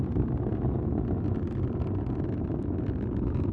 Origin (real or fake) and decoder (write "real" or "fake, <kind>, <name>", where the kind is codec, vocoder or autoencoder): real